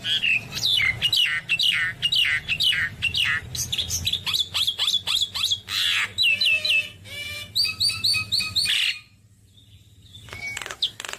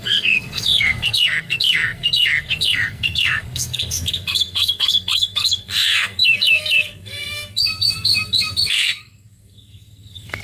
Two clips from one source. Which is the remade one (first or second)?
second